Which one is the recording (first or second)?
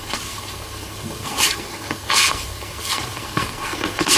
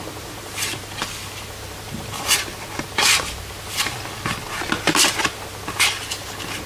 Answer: second